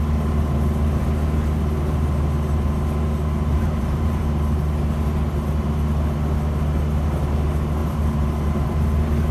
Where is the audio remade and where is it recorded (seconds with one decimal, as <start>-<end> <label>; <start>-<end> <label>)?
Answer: 0.0-3.5 recorded; 3.5-4.2 remade; 4.2-7.8 recorded; 7.8-8.9 remade; 8.9-9.3 recorded